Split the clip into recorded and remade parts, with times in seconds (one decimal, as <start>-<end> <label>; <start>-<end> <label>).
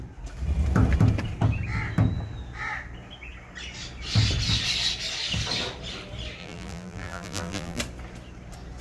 0.0-6.4 recorded; 6.4-7.8 remade; 7.8-8.8 recorded